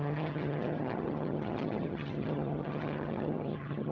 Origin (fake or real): fake